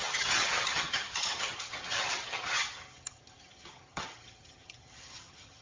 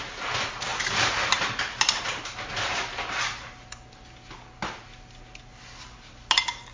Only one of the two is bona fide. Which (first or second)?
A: second